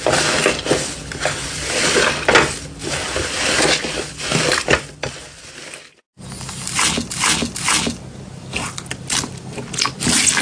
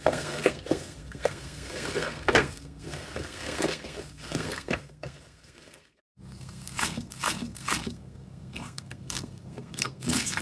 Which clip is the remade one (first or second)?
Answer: second